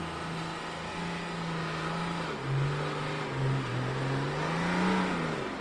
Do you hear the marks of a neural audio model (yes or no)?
no